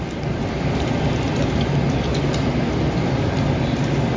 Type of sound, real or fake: real